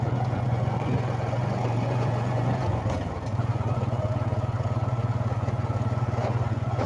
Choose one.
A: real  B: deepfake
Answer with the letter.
B